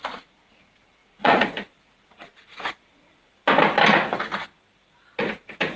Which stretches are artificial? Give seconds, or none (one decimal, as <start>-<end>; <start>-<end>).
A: 0.0-3.4; 5.2-5.8